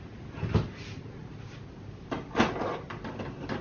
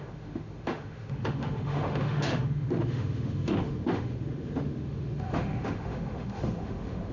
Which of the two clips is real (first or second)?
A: first